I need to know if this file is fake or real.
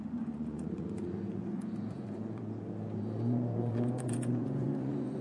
fake